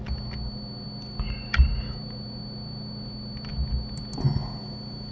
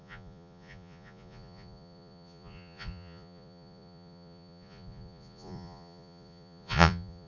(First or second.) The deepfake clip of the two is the second